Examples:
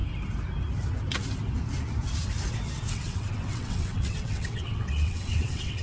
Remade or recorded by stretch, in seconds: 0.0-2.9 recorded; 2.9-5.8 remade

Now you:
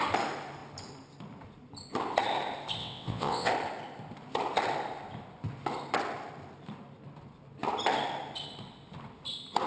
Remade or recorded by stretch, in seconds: 0.0-2.8 recorded; 2.8-3.5 remade; 3.5-9.7 recorded

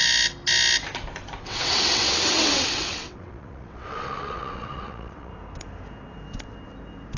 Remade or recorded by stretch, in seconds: 0.0-1.4 recorded; 1.4-5.3 remade; 5.3-7.2 recorded

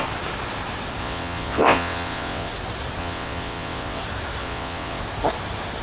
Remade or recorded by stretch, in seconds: 0.0-1.0 recorded; 1.0-2.5 remade; 2.5-3.0 recorded; 3.0-4.0 remade; 4.0-4.4 recorded; 4.4-5.0 remade; 5.0-5.8 recorded

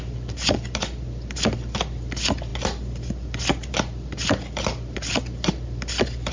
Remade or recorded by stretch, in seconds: 0.0-6.3 recorded

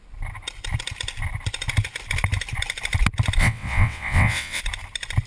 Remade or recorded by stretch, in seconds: 0.0-3.4 recorded; 3.4-4.6 remade; 4.6-5.3 recorded

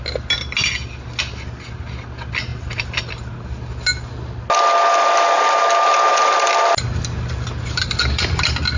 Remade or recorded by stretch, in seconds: 0.0-8.8 recorded